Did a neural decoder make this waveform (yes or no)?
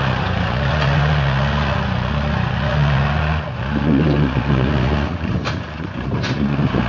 yes